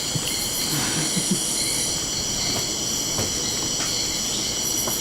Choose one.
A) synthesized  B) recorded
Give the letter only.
B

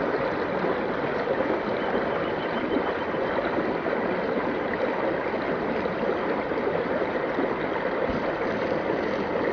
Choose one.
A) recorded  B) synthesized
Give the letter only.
A